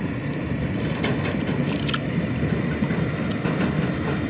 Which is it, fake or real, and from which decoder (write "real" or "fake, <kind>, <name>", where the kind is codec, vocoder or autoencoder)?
real